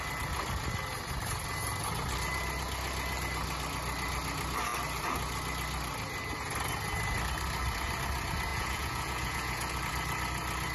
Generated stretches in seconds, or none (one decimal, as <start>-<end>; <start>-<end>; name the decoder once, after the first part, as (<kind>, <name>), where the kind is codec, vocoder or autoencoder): 8.5-9.8 (vocoder, Vocos)